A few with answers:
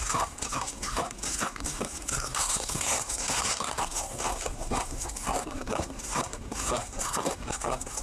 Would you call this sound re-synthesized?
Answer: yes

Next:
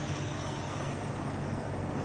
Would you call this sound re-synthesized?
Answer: yes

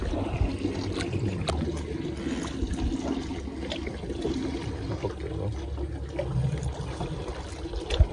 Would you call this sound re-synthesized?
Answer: no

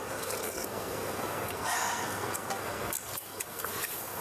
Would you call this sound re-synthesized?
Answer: yes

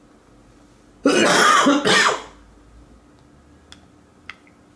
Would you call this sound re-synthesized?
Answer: no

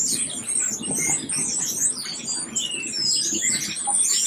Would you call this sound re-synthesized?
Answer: no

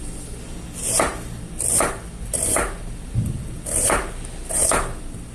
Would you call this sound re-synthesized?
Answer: no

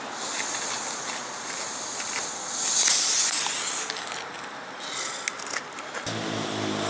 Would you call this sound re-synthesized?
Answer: no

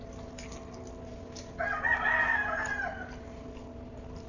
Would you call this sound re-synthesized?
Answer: no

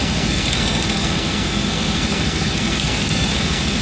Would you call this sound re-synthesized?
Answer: yes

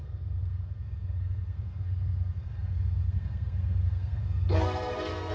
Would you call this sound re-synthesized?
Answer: yes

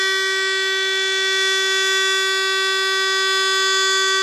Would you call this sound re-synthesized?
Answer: no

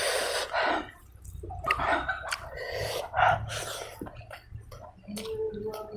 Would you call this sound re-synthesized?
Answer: no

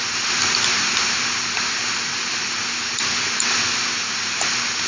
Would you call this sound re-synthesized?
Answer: no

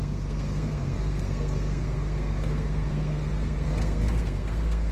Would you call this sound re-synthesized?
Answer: yes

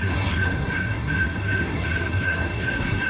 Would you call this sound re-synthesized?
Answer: yes